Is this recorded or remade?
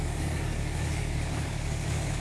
remade